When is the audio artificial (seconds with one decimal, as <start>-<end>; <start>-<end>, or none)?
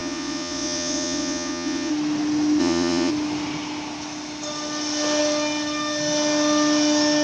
0.0-1.9; 2.6-3.1